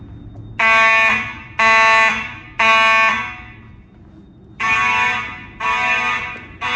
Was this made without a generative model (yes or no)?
yes